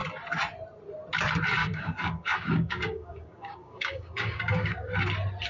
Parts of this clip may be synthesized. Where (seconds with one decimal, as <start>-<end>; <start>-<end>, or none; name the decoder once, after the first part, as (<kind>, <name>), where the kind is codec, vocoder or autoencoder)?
1.6-4.9 (codec, DAC)